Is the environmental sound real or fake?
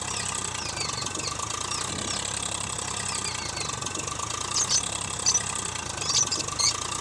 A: real